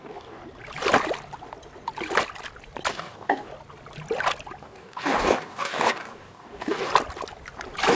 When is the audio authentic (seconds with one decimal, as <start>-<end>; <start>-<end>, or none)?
0.4-2.9; 3.5-4.6; 6.9-7.9